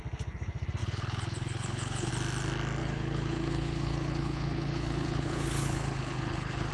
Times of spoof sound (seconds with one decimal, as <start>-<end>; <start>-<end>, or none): 0.8-2.1; 2.8-6.7

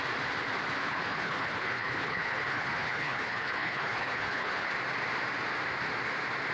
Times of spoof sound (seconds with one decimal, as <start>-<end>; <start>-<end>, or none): 0.8-4.7

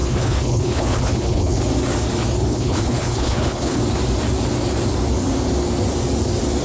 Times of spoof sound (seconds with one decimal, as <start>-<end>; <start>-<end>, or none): 0.0-1.6; 2.5-3.8